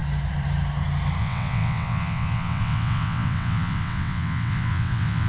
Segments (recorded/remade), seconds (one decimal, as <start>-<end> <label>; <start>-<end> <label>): 0.0-1.2 recorded; 1.2-5.3 remade